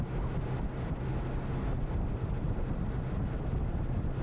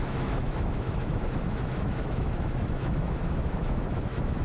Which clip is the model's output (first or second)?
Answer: second